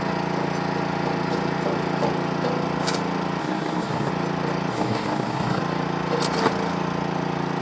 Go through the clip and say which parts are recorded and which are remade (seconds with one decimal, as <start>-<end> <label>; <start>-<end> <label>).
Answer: 0.0-3.4 recorded; 3.4-4.1 remade; 4.1-4.7 recorded; 4.7-5.6 remade; 5.6-7.6 recorded